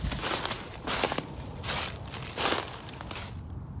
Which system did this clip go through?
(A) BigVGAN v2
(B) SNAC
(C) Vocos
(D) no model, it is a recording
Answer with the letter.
D